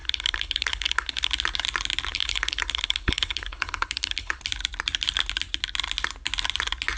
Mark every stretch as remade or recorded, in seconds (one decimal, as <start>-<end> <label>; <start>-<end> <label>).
0.0-1.3 remade; 1.3-2.1 recorded; 2.1-4.4 remade; 4.4-7.0 recorded